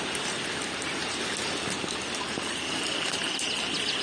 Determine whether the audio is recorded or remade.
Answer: recorded